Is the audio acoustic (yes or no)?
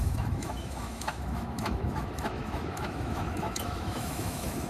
no